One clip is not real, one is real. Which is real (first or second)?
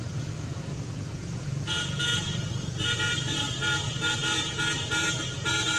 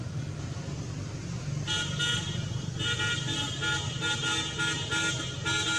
second